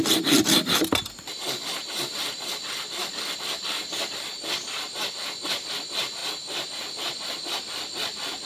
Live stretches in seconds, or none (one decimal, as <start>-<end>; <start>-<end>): 0.0-8.5